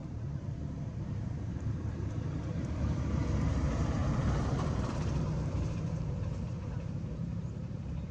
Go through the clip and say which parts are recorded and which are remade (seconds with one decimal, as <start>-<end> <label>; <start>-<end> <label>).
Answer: 0.0-8.1 remade